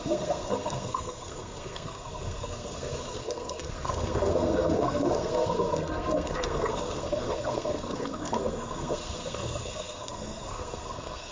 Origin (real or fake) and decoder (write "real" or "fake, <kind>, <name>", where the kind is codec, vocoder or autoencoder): fake, codec, SNAC